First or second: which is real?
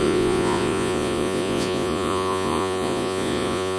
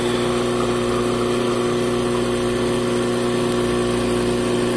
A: second